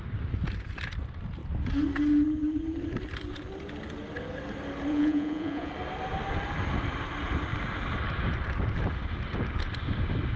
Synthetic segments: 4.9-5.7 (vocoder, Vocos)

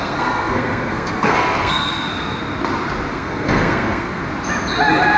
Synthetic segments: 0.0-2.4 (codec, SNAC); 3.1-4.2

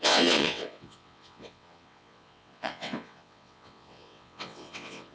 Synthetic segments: 0.0-5.1 (vocoder, WaveNeXt)

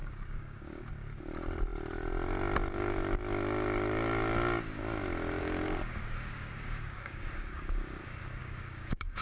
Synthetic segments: 0.0-0.9 (codec, DAC); 5.4-8.0; 8.4-9.2

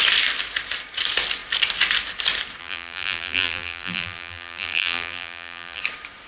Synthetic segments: 2.6-5.8 (vocoder, BigVGAN v2)